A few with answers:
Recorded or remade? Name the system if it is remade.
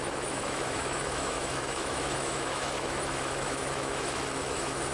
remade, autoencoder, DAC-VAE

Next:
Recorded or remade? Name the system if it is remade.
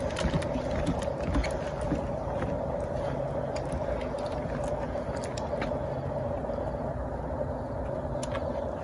recorded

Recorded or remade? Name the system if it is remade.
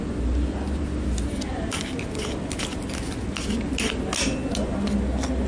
recorded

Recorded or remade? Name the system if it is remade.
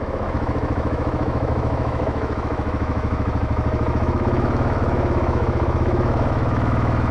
remade, autoencoder, DAC-VAE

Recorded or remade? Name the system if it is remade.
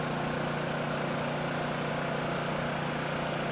recorded